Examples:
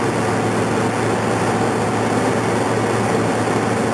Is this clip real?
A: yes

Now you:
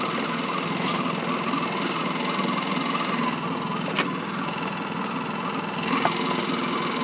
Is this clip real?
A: yes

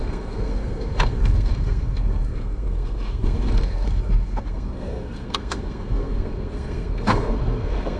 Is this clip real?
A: no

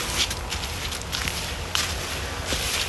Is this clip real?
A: yes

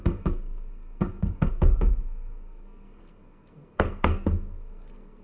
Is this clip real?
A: no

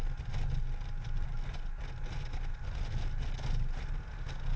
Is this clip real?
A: yes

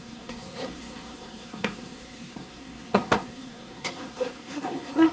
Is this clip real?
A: no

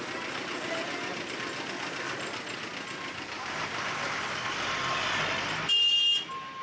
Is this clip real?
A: yes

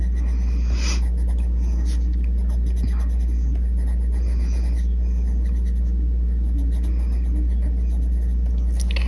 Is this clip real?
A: yes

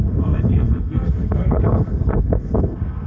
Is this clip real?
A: no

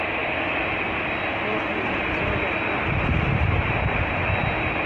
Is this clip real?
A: yes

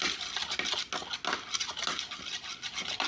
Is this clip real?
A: yes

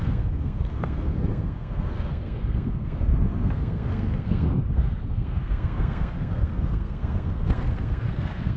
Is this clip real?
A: no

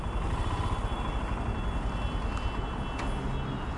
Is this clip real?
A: yes